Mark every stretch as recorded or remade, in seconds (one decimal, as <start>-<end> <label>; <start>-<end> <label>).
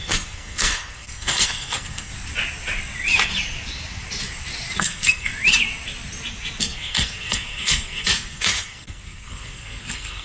0.0-2.1 remade; 2.1-4.8 recorded; 4.8-5.3 remade; 5.3-6.6 recorded; 6.6-10.2 remade